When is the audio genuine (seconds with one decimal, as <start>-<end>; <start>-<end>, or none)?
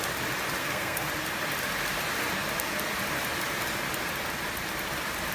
0.0-0.6; 1.1-5.3